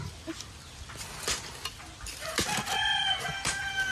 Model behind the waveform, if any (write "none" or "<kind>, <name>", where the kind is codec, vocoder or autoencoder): none